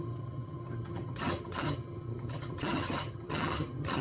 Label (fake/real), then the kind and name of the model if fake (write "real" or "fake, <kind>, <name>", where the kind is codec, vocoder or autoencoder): fake, vocoder, HiFi-GAN